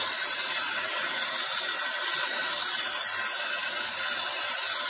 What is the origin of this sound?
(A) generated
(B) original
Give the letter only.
B